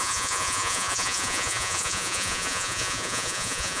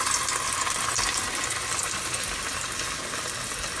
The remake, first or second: first